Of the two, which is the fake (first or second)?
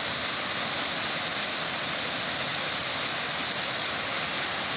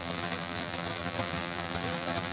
second